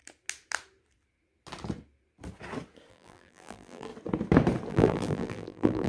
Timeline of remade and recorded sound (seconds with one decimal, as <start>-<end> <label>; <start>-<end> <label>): 0.0-2.9 recorded; 2.9-3.9 remade; 3.9-4.7 recorded; 4.7-5.9 remade

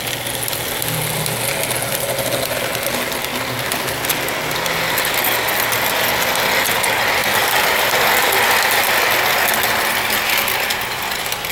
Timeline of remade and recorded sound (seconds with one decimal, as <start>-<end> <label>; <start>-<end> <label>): 0.0-7.2 recorded; 7.2-8.4 remade; 8.4-11.5 recorded

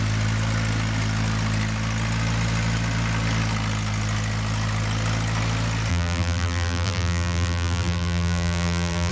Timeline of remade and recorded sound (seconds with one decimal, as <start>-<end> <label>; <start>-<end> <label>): 0.0-5.9 recorded; 5.9-9.1 remade

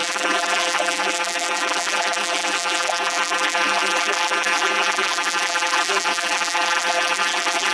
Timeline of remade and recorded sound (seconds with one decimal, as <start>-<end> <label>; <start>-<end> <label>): 0.0-7.7 remade

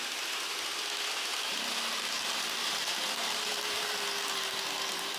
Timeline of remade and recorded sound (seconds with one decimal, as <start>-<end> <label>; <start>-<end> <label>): 0.0-1.3 recorded; 1.3-4.0 remade; 4.0-5.2 recorded